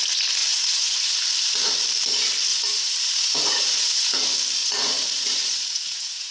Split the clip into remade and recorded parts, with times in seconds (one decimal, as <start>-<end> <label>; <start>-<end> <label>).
0.0-0.4 recorded; 0.4-1.2 remade; 1.2-2.5 recorded; 2.5-4.1 remade; 4.1-4.6 recorded; 4.6-6.3 remade